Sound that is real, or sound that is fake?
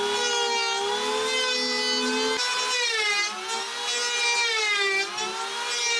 real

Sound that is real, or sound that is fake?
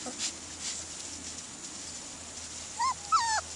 real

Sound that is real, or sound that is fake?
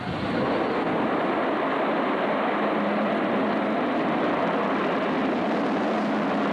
real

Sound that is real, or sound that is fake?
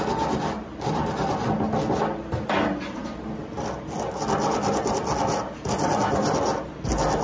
real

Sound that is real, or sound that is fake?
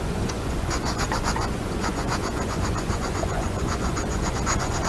fake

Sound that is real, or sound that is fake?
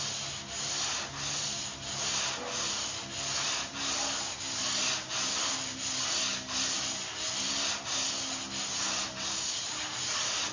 real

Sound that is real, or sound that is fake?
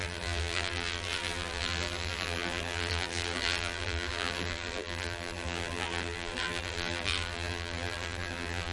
fake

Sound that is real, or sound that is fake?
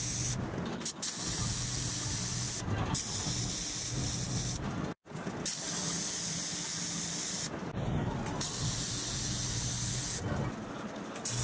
real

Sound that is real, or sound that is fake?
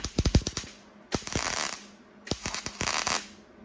real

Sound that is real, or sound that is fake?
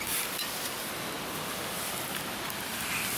real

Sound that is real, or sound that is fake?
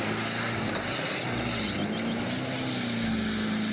real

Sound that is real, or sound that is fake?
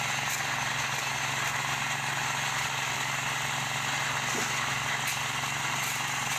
real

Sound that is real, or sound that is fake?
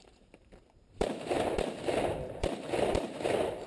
fake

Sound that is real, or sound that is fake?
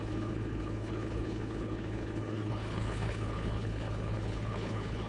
fake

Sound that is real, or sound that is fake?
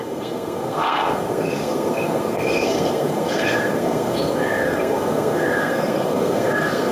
fake